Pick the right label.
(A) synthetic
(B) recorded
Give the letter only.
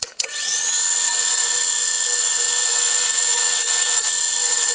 A